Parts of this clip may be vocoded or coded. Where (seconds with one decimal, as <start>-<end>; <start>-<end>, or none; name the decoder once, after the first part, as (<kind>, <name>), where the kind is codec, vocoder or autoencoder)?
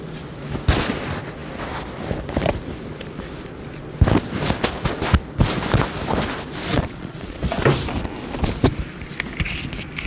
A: 6.7-7.6 (vocoder, Vocos)